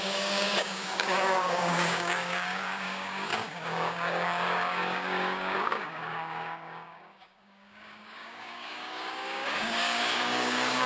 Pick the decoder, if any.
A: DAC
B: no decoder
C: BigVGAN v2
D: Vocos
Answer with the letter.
A